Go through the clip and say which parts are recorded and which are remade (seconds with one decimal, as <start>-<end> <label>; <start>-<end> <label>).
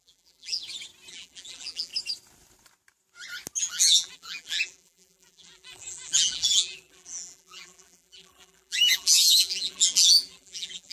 0.0-0.6 remade; 0.6-1.1 recorded; 1.1-1.9 remade; 1.9-3.6 recorded; 3.6-10.9 remade